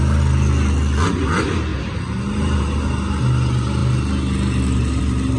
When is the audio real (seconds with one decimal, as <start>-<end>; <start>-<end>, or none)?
0.0-5.4